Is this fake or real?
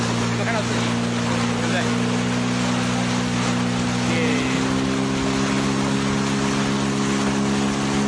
real